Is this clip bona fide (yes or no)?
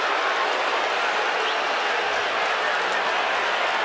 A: yes